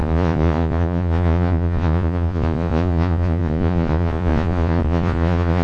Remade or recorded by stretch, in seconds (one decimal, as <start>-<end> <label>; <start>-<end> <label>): 0.0-5.6 remade